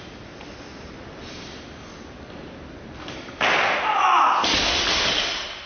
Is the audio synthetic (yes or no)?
no